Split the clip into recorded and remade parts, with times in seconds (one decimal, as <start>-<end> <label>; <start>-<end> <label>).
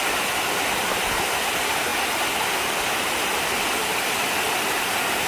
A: 0.0-1.9 remade; 1.9-5.3 recorded